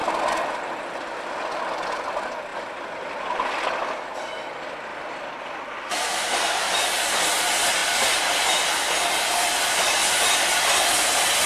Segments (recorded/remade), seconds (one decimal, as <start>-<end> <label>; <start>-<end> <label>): 0.0-1.6 remade; 1.6-2.5 recorded; 2.5-3.7 remade; 3.7-4.9 recorded; 4.9-6.7 remade; 6.7-11.5 recorded